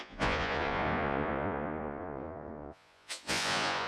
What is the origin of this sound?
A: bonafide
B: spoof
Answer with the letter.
B